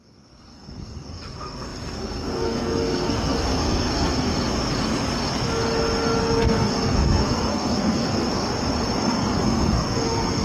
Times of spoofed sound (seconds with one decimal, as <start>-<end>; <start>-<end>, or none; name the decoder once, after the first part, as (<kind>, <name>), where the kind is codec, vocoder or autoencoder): 0.0-4.3 (codec, SNAC); 6.2-8.3; 9.0-10.4